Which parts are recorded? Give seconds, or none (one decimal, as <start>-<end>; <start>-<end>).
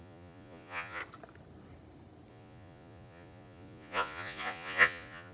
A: 1.0-2.3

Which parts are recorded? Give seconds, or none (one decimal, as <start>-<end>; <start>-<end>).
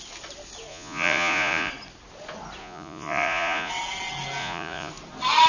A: 0.0-0.7; 1.7-2.6; 3.7-4.4; 4.9-5.5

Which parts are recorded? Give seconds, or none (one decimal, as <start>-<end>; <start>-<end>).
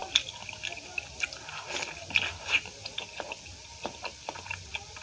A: 0.0-5.0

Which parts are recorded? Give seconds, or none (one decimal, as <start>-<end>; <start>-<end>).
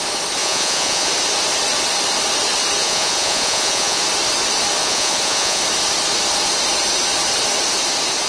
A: 0.0-0.4; 1.1-2.8; 4.0-4.8; 5.6-8.3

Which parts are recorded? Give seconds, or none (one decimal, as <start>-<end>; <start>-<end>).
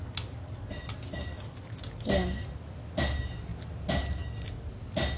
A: 0.0-5.2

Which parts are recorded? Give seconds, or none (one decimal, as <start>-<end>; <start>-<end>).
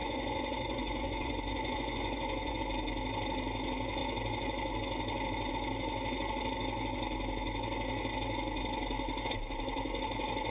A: 2.6-10.5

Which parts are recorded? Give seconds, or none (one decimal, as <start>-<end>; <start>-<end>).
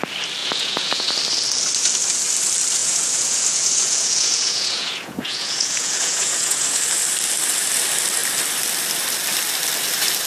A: 0.0-0.4; 1.1-2.8; 6.8-10.3